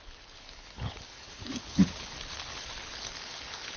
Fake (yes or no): yes